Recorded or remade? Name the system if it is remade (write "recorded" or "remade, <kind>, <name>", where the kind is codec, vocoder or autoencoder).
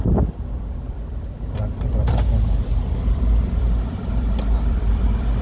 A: remade, vocoder, BigVGAN v2